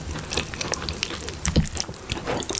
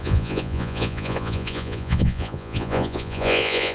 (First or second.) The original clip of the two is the first